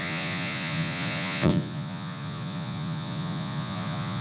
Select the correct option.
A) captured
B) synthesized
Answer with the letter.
B